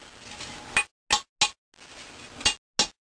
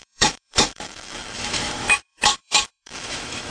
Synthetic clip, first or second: second